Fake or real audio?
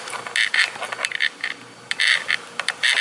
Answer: real